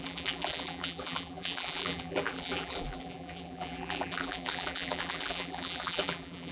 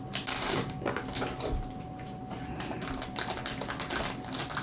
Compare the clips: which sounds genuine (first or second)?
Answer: second